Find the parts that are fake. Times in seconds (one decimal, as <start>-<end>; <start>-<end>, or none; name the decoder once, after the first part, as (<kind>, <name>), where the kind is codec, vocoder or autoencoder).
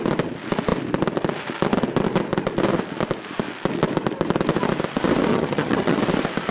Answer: 5.3-6.0 (vocoder, HiFi-GAN)